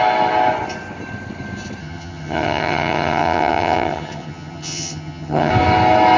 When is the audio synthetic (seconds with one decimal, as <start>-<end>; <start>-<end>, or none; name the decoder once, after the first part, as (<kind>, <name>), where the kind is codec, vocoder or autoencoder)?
1.8-5.5 (vocoder, HiFi-GAN)